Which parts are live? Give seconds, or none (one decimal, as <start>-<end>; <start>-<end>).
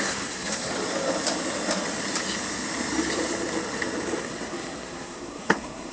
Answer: 0.7-4.2